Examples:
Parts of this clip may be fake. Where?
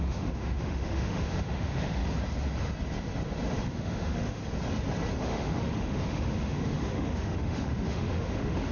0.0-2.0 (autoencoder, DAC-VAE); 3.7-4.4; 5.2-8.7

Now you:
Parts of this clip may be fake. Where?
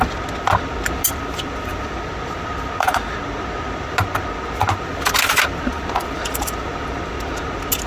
none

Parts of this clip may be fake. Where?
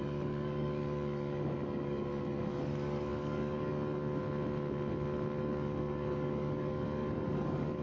0.0-4.2 (codec, DAC); 5.4-7.8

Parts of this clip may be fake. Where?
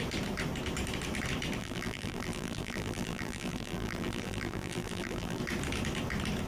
1.6-5.4 (vocoder, BigVGAN v2)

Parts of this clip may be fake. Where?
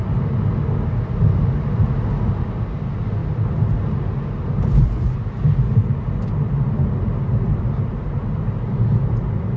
none